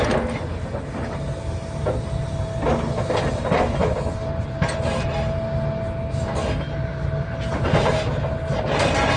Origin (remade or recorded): recorded